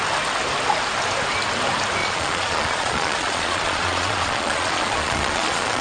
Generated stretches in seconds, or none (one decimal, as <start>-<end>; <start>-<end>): 2.0-5.8